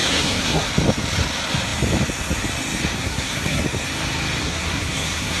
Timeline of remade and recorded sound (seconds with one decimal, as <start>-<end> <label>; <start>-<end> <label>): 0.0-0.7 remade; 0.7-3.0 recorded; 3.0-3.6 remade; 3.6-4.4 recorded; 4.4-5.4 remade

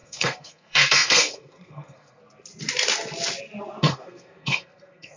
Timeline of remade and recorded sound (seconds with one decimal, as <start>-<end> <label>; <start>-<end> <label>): 0.0-2.2 remade; 2.2-3.8 recorded; 3.8-5.2 remade

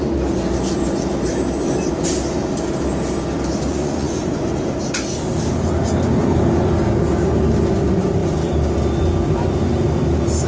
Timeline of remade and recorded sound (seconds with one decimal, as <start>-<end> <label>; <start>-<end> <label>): 0.0-3.7 recorded; 3.7-4.6 remade; 4.6-10.5 recorded